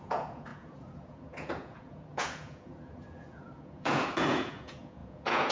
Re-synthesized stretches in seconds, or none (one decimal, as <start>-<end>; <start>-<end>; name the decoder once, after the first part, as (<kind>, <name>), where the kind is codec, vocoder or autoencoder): 0.0-5.5 (vocoder, Vocos)